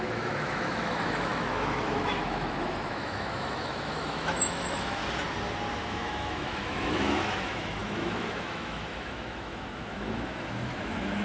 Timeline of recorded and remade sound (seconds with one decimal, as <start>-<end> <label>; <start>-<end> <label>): 0.0-5.0 remade; 5.0-5.7 recorded; 5.7-11.2 remade